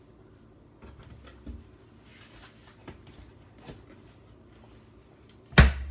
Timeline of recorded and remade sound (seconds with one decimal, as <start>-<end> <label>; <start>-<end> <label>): 0.0-5.9 recorded